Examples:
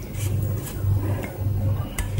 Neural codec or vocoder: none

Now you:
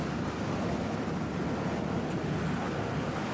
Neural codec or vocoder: none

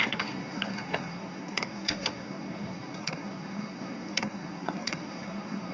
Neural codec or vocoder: codec, SNAC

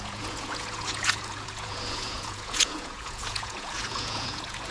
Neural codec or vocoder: vocoder, Vocos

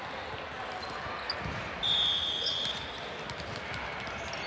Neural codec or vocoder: none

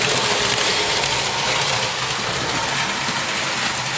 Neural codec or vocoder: none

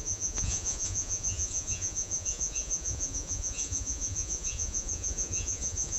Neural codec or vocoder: vocoder, Vocos